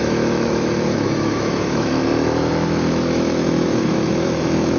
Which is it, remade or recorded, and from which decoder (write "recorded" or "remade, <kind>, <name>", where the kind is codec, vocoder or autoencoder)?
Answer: remade, autoencoder, DAC-VAE